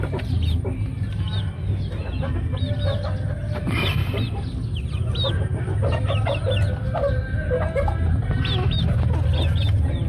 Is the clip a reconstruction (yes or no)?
no